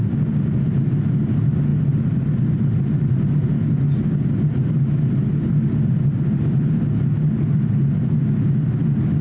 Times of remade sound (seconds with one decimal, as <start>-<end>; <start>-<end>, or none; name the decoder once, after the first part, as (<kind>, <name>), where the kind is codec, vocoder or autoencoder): none